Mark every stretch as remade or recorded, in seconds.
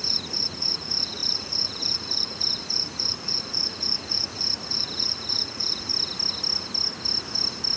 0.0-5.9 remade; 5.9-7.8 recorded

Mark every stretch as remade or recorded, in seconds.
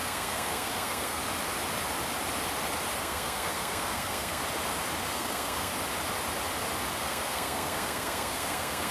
0.0-1.2 remade; 1.2-3.0 recorded; 3.0-4.4 remade; 4.4-5.1 recorded; 5.1-5.7 remade; 5.7-7.0 recorded; 7.0-8.9 remade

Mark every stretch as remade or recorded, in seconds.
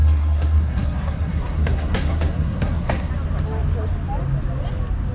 0.0-3.1 remade; 3.1-5.1 recorded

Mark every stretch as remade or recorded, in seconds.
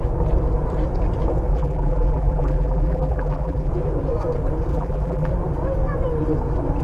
0.0-1.5 recorded; 1.5-3.7 remade; 3.7-4.7 recorded; 4.7-5.3 remade; 5.3-6.8 recorded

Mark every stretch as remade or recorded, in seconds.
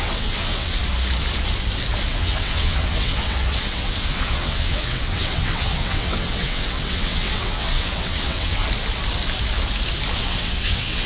0.0-0.8 remade; 0.8-2.1 recorded; 2.1-8.6 remade; 8.6-10.1 recorded; 10.1-11.1 remade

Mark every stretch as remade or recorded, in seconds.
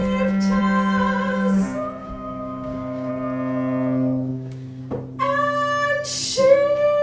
0.0-2.0 recorded; 2.0-3.1 remade; 3.1-4.3 recorded; 4.3-4.8 remade; 4.8-7.0 recorded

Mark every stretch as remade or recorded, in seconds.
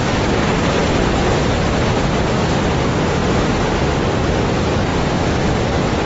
0.0-0.8 recorded; 0.8-2.6 remade; 2.6-4.9 recorded; 4.9-6.1 remade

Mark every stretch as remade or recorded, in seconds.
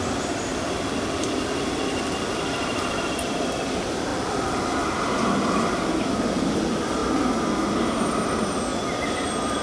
0.0-0.5 recorded; 0.5-3.3 remade; 3.3-4.1 recorded; 4.1-4.6 remade; 4.6-9.6 recorded